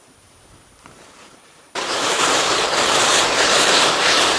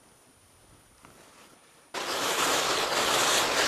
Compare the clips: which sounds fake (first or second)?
first